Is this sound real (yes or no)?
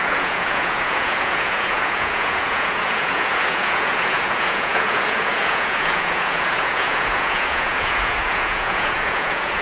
no